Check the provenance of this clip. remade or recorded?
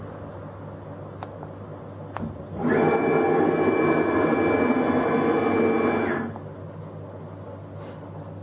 recorded